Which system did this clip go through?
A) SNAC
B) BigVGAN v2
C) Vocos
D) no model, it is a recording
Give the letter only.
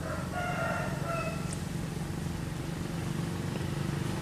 D